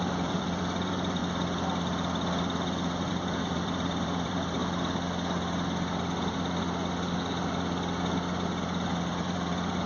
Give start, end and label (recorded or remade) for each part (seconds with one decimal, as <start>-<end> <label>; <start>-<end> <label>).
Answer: 0.0-1.2 remade; 1.2-3.1 recorded; 3.1-4.6 remade; 4.6-8.9 recorded; 8.9-9.9 remade